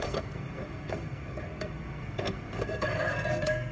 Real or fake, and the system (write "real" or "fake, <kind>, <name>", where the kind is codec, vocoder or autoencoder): fake, codec, SNAC